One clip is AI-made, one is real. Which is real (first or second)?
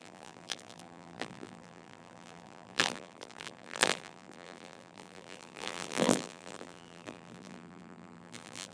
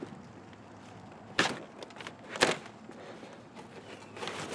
second